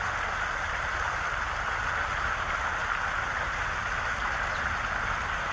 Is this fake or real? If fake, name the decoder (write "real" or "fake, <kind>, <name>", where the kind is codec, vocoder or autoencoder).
real